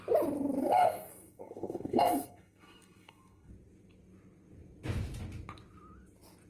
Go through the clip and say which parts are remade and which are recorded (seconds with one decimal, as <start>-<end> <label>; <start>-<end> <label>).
0.0-0.6 recorded; 0.6-3.5 remade; 3.5-6.5 recorded